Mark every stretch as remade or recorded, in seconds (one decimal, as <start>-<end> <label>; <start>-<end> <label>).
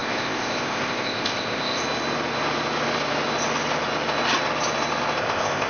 0.0-1.8 remade; 1.8-5.2 recorded; 5.2-5.7 remade